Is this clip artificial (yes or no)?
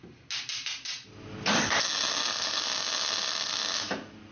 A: no